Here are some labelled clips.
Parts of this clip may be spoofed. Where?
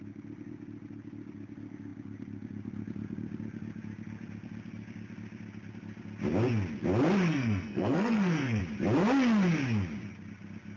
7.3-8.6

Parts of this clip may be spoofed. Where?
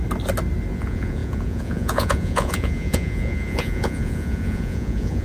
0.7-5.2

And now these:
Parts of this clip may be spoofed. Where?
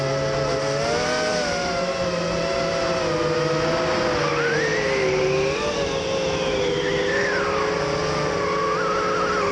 none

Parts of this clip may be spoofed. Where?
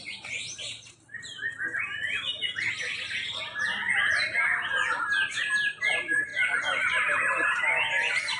none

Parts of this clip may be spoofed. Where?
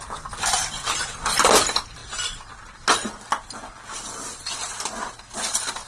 none